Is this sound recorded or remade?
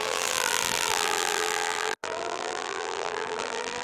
remade